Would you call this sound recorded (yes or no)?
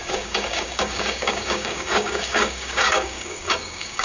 no